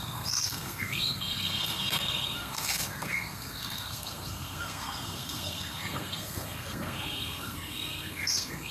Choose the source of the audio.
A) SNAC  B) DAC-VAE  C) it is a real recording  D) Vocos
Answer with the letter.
A